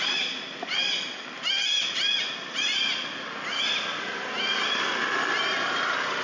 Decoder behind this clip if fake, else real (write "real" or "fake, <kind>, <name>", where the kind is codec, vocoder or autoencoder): real